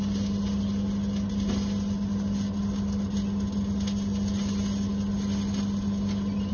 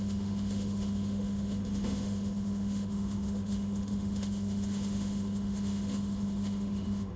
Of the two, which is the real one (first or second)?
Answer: first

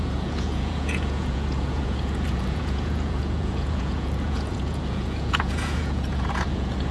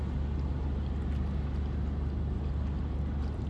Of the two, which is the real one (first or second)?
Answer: second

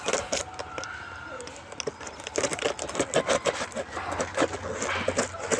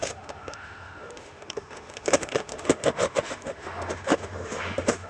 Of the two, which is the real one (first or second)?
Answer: first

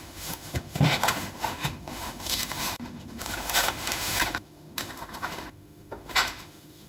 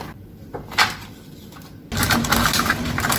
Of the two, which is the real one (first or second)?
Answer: second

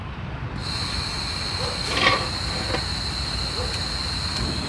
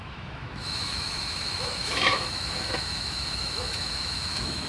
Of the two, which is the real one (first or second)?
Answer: first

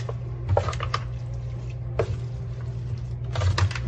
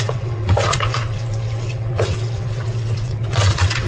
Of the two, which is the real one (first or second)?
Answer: first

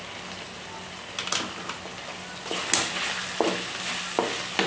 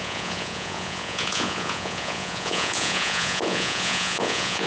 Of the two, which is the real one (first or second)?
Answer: first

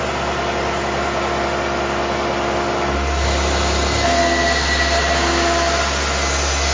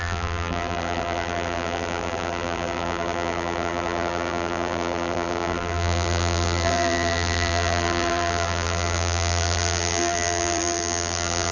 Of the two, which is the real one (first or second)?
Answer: first